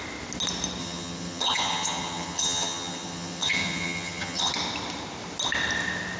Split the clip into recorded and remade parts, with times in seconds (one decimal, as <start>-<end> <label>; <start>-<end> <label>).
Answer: 0.0-0.8 recorded; 0.8-4.5 remade; 4.5-6.2 recorded